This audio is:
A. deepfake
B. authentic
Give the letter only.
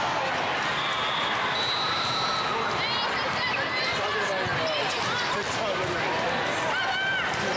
B